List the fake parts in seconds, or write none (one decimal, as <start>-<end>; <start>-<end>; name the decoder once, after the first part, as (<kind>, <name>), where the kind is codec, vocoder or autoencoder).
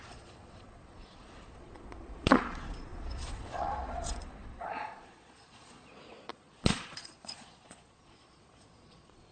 0.0-9.3 (vocoder, Vocos)